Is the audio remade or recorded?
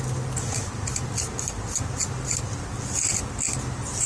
recorded